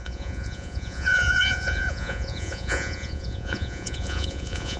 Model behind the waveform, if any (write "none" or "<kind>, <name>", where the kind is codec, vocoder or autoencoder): vocoder, Vocos